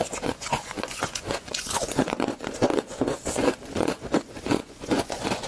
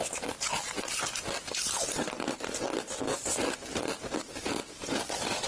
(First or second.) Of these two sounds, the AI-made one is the first